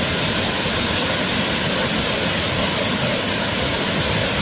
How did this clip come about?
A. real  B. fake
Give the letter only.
A